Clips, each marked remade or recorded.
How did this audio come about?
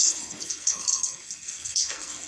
remade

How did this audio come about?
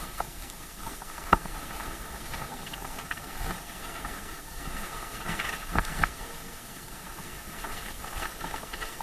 remade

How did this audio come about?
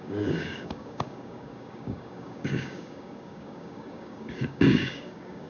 remade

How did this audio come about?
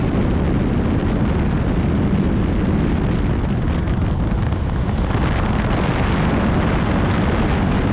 recorded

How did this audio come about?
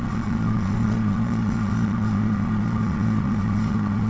remade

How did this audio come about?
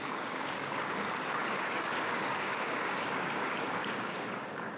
remade